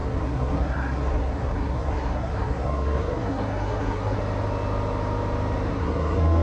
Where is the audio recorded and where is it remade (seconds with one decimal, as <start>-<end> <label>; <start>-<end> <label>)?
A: 0.0-4.2 remade; 4.2-5.7 recorded; 5.7-6.4 remade